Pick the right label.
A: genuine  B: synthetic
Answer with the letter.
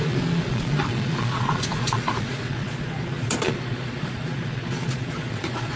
B